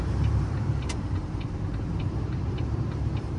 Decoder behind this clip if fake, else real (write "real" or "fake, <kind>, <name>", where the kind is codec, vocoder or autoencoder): fake, vocoder, BigVGAN v2